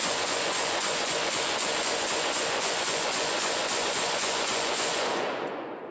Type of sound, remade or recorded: remade